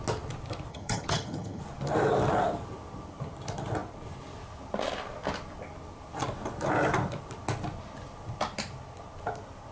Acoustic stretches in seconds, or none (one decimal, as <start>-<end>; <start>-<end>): 0.0-0.7; 1.6-9.7

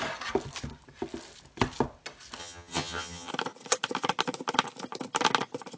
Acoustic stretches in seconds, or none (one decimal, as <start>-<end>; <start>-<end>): 0.0-2.4; 3.3-5.8

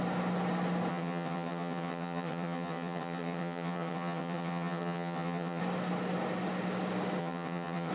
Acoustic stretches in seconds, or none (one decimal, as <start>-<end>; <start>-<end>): 0.0-0.9; 5.6-7.2

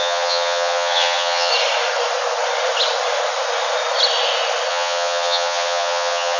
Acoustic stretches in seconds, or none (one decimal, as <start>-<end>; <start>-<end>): 1.5-4.7

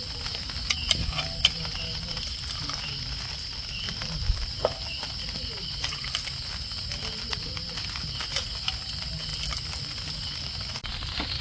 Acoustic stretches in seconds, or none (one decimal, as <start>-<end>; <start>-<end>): 0.0-11.4

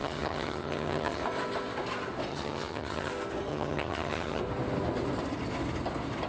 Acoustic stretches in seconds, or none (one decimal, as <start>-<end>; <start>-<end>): 1.2-2.3; 3.1-3.5; 4.4-6.3

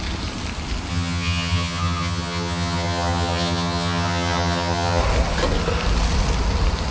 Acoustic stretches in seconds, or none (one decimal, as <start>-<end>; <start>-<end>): 0.0-0.9; 5.0-6.9